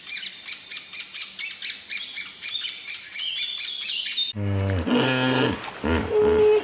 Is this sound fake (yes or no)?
no